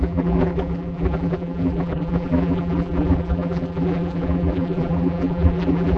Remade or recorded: remade